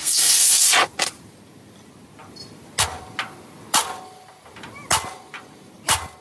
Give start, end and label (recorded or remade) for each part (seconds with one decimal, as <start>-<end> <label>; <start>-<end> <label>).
0.0-0.6 remade; 0.6-6.2 recorded